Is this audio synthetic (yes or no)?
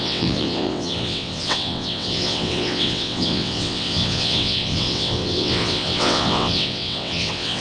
yes